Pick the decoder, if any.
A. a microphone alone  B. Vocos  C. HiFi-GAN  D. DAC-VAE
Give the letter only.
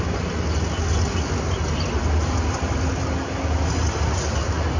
A